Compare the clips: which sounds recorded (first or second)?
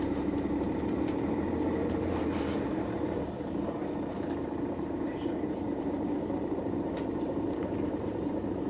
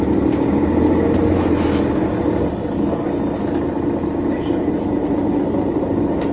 second